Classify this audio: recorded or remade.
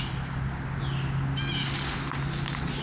recorded